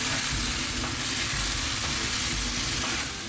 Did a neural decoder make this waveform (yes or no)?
no